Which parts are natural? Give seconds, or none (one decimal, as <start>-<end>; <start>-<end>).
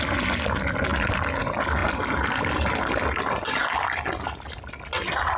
0.0-5.4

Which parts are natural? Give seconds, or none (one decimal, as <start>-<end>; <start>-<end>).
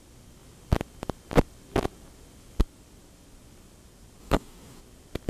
0.0-4.2; 4.8-5.3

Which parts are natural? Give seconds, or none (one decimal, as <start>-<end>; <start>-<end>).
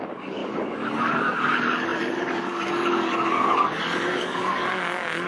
none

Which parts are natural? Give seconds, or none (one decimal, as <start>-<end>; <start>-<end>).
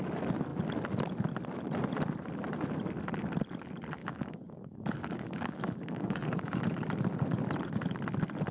0.0-4.0; 6.6-8.5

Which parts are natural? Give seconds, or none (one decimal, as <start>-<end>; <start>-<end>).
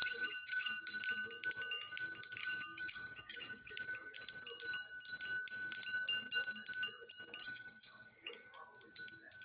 0.8-2.4; 3.7-7.4; 8.3-9.4